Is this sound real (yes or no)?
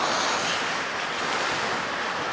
yes